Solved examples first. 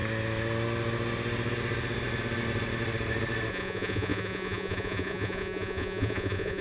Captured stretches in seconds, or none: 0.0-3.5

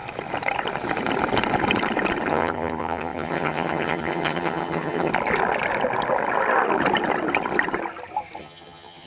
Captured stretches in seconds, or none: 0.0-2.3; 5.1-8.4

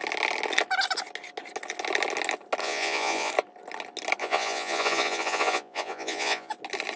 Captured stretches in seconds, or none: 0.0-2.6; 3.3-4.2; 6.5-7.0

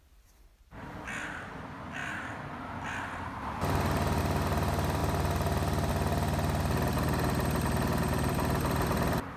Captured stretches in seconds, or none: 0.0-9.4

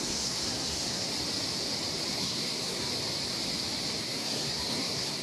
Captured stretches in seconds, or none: 1.1-2.2; 2.9-4.0

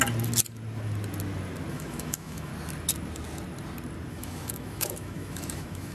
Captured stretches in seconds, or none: 0.0-1.7; 2.5-4.1

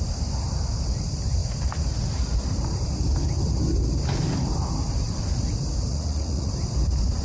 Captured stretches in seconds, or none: 0.0-5.9; 6.5-7.2

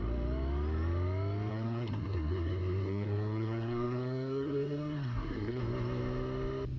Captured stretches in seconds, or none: 0.0-1.5; 5.6-6.8